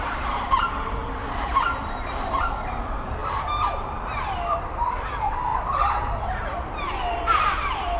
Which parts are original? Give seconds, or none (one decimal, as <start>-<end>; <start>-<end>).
1.0-1.8